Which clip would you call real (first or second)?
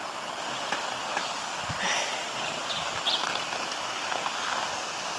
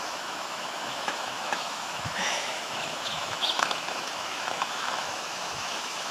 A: first